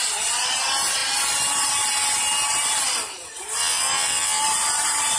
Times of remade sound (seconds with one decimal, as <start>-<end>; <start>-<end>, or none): 3.6-4.4